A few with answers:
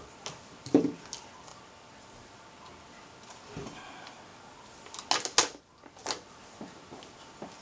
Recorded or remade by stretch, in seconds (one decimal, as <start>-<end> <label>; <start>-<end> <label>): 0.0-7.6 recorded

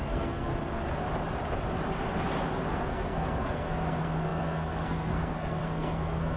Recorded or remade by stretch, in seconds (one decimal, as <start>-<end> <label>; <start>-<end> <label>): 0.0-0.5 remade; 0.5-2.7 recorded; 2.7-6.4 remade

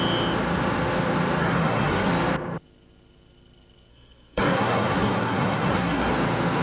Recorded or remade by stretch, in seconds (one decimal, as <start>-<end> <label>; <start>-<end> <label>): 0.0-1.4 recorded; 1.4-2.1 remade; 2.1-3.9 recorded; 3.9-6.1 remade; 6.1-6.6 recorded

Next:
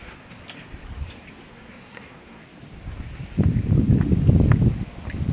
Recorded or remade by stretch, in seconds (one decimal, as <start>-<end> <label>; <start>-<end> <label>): 0.0-0.4 remade; 0.4-1.5 recorded; 1.5-2.4 remade; 2.4-5.3 recorded

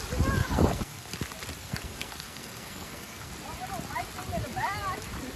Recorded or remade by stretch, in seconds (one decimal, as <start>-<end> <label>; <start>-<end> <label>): 0.0-0.4 recorded; 0.4-1.1 remade; 1.1-1.6 recorded; 1.6-3.3 remade; 3.3-5.4 recorded